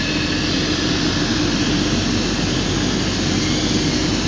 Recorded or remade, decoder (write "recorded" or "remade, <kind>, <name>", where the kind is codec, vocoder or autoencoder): recorded